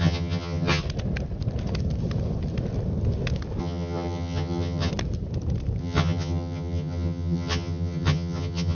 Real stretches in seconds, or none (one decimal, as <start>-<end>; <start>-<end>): 0.8-3.6; 4.9-5.8